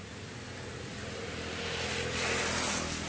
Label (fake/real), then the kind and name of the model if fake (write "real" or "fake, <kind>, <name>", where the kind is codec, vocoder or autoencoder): real